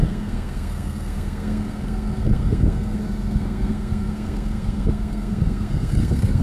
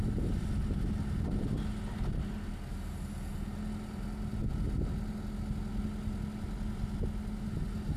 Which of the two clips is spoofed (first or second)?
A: first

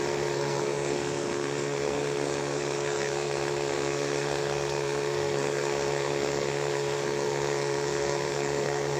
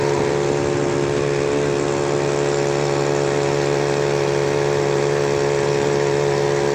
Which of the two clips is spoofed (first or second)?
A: first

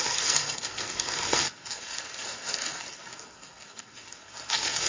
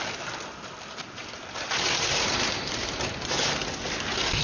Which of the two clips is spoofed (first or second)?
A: first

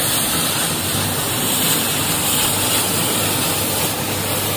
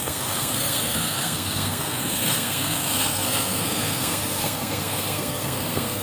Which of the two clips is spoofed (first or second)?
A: second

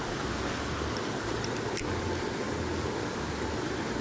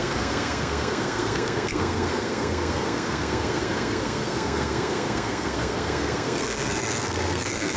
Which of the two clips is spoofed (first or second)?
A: second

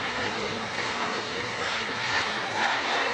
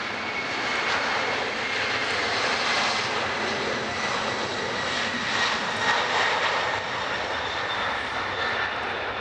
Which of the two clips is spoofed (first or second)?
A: first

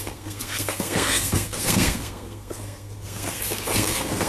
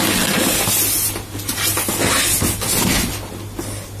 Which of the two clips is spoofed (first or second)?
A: first